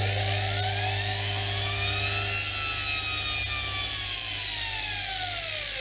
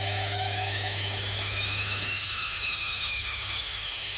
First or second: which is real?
first